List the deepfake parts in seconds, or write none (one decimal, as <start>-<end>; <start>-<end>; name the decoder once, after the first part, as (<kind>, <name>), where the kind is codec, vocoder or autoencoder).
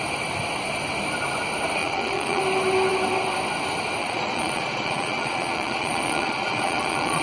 1.8-2.4 (vocoder, Vocos); 4.0-7.2